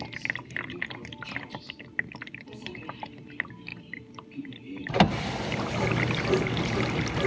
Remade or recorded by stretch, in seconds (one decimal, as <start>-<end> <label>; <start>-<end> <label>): 0.0-7.3 recorded